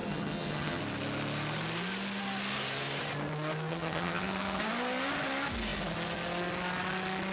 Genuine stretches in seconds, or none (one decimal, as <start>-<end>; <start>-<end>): 0.8-3.7; 4.6-7.3